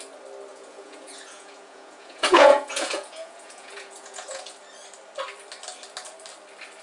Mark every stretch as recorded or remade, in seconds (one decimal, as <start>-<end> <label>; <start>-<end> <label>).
0.0-0.5 recorded; 0.5-4.5 remade; 4.5-6.8 recorded

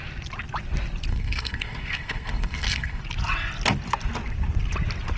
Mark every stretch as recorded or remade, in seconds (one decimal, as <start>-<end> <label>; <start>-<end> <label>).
0.0-1.1 recorded; 1.1-3.0 remade; 3.0-5.2 recorded